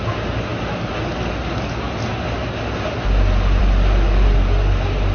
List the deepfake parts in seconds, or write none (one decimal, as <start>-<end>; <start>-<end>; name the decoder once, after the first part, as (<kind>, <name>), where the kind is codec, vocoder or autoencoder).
none